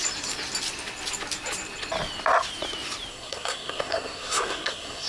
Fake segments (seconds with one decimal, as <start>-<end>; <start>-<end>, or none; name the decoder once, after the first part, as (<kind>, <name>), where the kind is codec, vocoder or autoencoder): 3.1-5.1 (codec, SNAC)